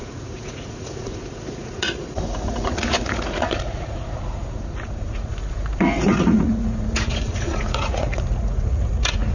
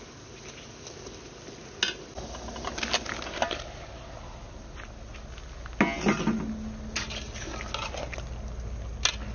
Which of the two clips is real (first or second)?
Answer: second